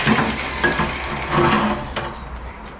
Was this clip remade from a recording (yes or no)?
no